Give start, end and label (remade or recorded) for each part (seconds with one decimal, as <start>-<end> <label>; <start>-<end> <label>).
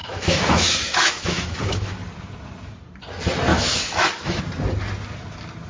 0.0-1.9 remade; 1.9-3.5 recorded; 3.5-4.4 remade; 4.4-5.7 recorded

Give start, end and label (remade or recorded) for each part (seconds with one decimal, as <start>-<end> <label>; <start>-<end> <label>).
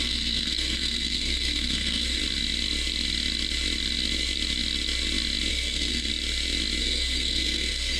0.0-2.2 remade; 2.2-5.5 recorded; 5.5-6.1 remade; 6.1-6.8 recorded; 6.8-8.0 remade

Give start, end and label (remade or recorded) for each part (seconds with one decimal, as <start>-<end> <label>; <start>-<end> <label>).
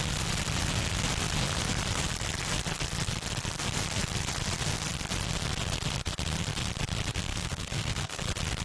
0.0-7.3 recorded; 7.3-8.2 remade; 8.2-8.6 recorded